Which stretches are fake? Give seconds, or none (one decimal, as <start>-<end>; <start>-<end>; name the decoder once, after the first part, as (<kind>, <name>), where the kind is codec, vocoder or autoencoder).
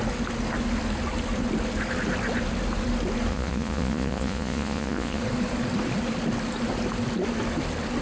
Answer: 3.3-5.2 (vocoder, Vocos)